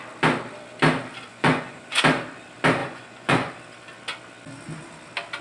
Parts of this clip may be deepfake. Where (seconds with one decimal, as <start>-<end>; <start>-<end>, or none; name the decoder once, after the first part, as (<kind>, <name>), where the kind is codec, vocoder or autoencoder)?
1.3-2.0 (vocoder, Vocos); 2.8-3.5